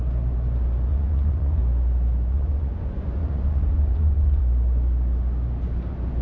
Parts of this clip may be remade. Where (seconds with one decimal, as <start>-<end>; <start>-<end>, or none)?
0.9-1.6; 2.3-4.4